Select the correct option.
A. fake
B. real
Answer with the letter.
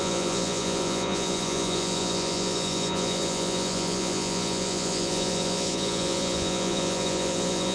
A